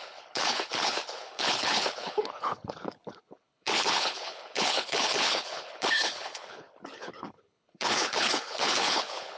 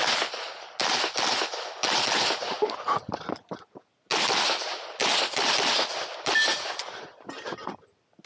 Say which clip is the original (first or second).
second